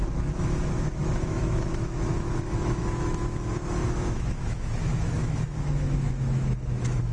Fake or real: fake